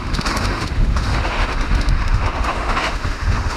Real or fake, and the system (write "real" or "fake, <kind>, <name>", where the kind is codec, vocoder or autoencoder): fake, autoencoder, DAC-VAE